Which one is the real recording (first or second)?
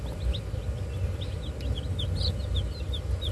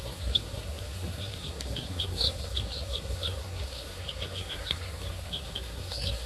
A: first